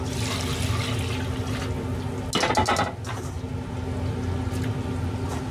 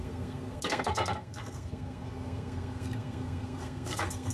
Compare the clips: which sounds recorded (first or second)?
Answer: first